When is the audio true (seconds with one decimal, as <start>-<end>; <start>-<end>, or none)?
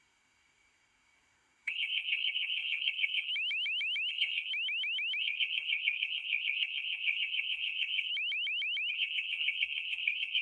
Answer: 3.3-4.1; 4.5-5.2; 8.1-8.9